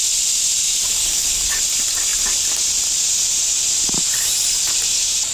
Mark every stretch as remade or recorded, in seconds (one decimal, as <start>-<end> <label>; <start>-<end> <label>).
0.0-1.0 recorded; 1.0-1.6 remade; 1.6-5.3 recorded